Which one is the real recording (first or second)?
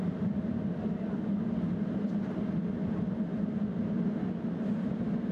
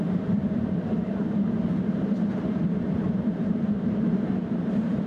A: first